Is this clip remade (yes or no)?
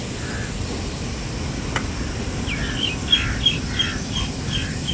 no